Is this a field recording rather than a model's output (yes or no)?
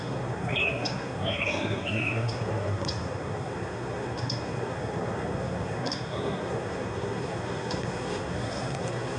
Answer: no